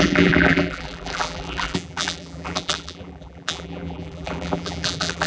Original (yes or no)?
no